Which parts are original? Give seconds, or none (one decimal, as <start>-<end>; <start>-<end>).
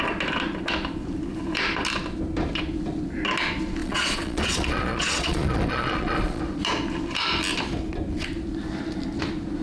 0.0-3.8; 6.4-9.6